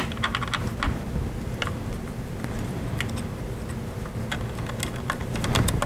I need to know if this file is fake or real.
real